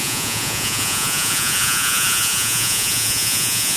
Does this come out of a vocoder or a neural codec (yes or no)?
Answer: yes